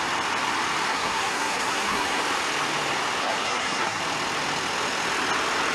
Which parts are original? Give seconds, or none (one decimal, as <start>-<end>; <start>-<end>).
0.0-0.9; 2.2-3.2; 4.0-5.7